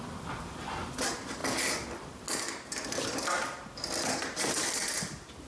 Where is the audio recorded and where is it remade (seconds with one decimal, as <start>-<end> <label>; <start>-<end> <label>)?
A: 0.0-5.5 recorded